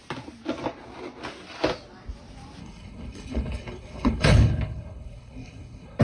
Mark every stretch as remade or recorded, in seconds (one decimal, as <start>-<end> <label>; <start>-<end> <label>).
0.0-2.6 recorded; 2.6-6.0 remade